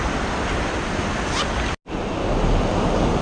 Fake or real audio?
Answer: real